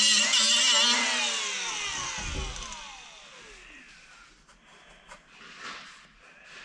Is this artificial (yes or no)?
no